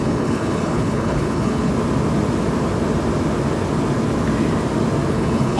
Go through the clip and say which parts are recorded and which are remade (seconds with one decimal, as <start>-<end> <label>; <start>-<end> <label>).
0.0-1.7 remade; 1.7-5.1 recorded; 5.1-5.6 remade